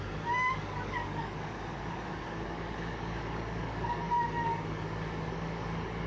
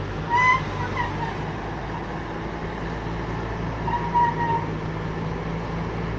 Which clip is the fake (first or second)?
first